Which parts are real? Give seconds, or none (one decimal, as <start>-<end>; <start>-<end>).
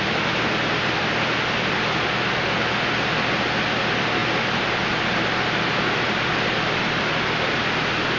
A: 0.0-8.2